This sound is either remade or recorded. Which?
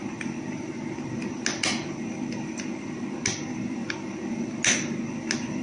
recorded